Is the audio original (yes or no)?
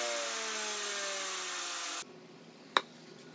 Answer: yes